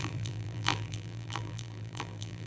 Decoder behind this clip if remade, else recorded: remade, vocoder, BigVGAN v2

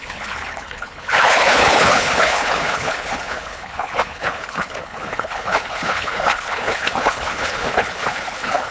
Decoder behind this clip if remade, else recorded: remade, codec, HILCodec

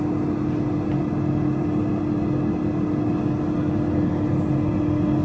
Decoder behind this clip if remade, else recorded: recorded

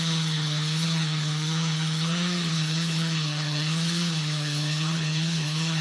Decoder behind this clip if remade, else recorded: remade, codec, HILCodec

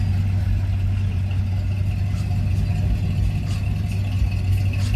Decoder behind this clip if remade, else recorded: recorded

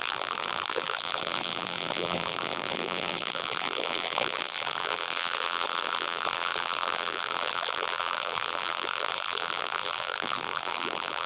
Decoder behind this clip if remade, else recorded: remade, vocoder, BigVGAN v2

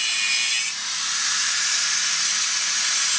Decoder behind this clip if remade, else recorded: recorded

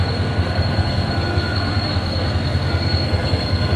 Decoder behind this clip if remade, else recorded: remade, codec, SNAC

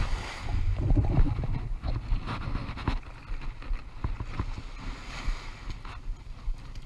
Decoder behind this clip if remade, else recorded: recorded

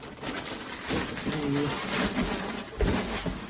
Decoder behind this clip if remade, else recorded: recorded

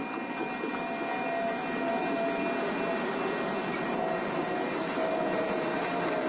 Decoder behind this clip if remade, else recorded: recorded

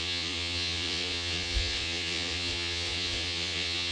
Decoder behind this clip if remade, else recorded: remade, vocoder, Vocos